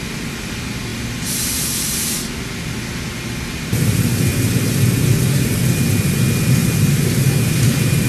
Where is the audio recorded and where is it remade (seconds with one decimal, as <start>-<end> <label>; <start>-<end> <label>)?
0.0-0.9 recorded; 0.9-3.8 remade; 3.8-6.6 recorded; 6.6-8.1 remade